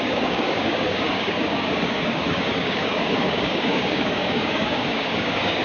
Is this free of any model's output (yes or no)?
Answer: no